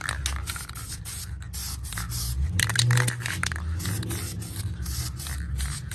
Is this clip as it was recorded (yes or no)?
yes